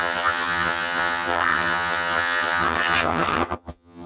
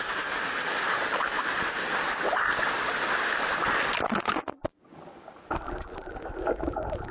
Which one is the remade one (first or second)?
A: first